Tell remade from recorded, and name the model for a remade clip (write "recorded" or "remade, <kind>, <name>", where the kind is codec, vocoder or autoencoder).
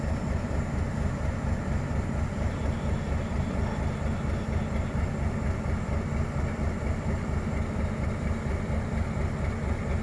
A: recorded